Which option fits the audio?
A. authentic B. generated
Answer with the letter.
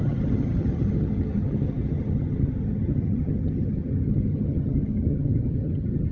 B